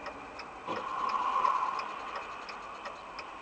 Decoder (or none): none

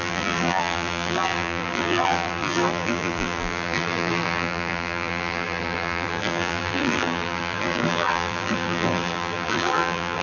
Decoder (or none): vocoder, BigVGAN v2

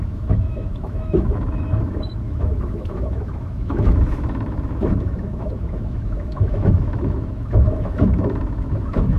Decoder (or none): autoencoder, DAC-VAE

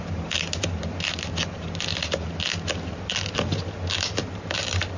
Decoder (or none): none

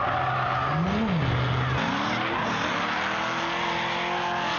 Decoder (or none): none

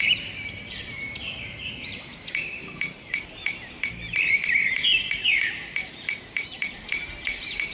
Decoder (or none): vocoder, BigVGAN v2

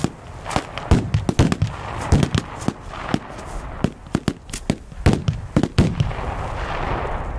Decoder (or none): none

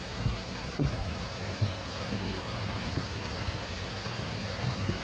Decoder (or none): codec, SNAC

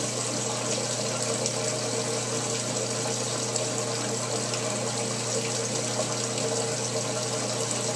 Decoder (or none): none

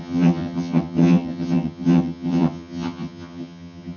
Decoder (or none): vocoder, HiFi-GAN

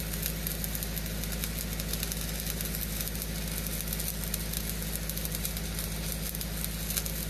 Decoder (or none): none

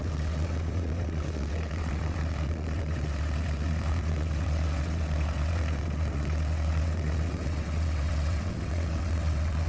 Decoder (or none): vocoder, WaveNeXt